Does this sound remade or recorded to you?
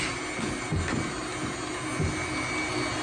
recorded